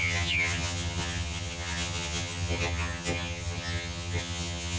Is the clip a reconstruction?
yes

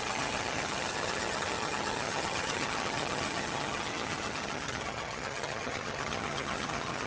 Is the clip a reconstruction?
yes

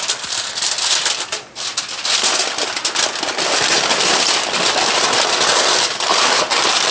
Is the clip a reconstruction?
no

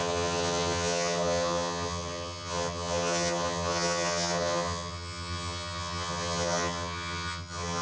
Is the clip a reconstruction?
yes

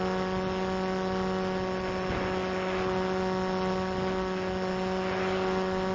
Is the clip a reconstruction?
no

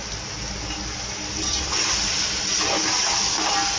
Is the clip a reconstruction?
no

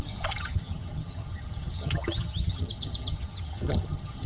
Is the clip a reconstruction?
yes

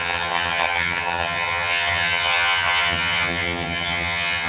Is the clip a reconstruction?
yes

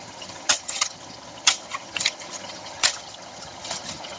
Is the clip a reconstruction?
yes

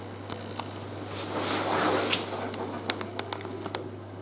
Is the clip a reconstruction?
no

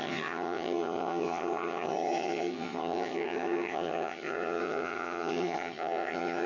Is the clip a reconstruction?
yes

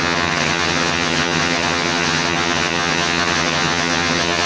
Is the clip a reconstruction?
yes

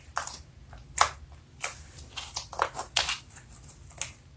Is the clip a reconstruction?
no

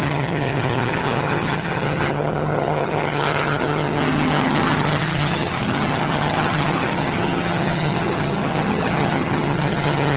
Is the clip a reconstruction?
yes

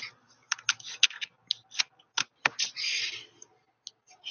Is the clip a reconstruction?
no